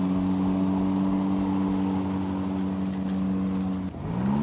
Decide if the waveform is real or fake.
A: real